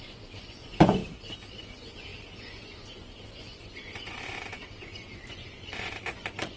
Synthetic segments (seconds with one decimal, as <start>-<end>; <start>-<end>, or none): 0.0-1.0; 1.6-6.6

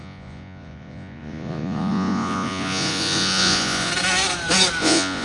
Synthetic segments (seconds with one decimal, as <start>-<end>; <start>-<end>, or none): 0.0-3.9; 4.8-5.2